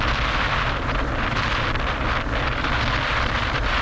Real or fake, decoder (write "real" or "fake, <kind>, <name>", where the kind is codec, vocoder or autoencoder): real